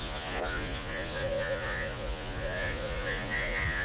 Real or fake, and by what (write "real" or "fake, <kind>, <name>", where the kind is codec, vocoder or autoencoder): fake, vocoder, Vocos